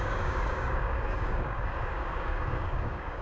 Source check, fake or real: fake